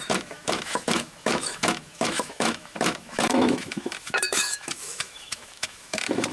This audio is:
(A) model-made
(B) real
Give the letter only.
A